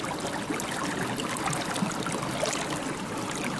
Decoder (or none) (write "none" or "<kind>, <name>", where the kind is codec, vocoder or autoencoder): none